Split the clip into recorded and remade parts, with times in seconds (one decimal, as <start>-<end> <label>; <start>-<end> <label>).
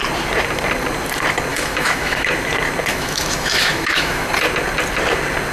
0.0-1.5 recorded; 1.5-2.3 remade; 2.3-2.9 recorded; 2.9-4.3 remade; 4.3-5.5 recorded